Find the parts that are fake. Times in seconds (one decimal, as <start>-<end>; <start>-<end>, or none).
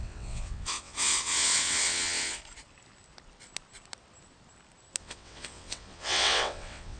0.0-2.4; 5.0-7.0